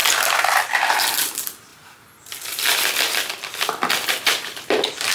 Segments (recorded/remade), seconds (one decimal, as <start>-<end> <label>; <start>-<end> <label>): 0.0-0.9 remade; 0.9-1.7 recorded; 1.7-5.1 remade